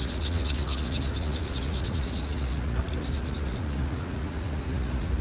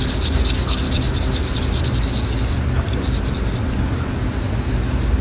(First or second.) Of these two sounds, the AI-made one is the first